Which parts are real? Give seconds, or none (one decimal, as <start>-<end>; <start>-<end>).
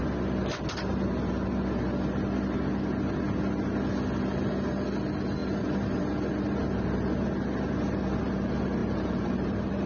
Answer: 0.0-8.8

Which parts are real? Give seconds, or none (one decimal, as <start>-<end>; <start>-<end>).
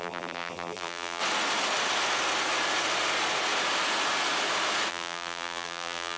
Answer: 1.2-4.9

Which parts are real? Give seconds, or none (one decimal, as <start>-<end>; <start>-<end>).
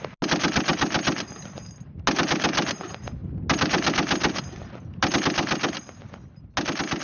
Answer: 0.0-7.0